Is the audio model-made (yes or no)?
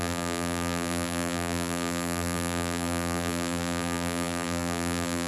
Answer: yes